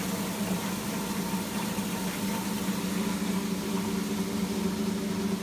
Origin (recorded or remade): recorded